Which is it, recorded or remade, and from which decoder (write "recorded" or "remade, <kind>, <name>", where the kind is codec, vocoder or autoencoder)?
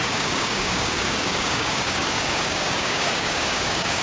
remade, codec, DAC